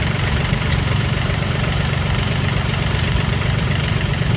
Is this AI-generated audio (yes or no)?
yes